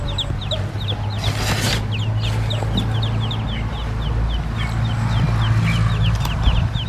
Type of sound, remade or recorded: recorded